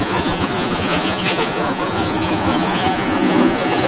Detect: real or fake fake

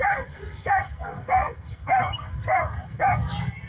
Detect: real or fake fake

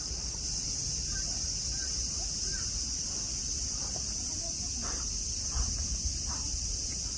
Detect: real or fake real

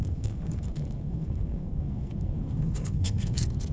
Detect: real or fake fake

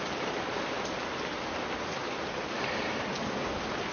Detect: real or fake real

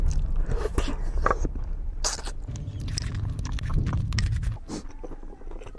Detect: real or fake real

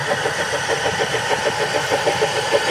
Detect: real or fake real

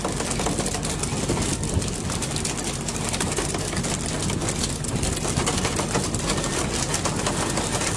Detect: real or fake real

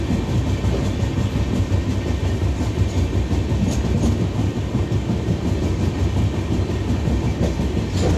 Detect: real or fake real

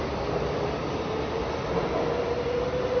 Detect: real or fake real